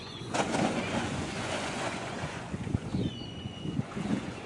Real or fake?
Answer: fake